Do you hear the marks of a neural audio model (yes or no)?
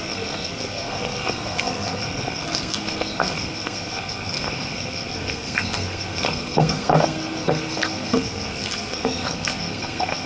yes